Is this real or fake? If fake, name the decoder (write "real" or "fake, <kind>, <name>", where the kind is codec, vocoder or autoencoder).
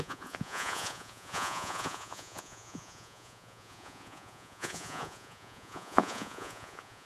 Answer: fake, vocoder, Vocos